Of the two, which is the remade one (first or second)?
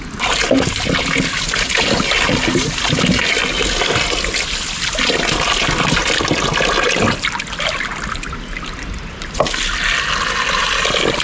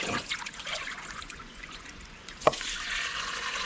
second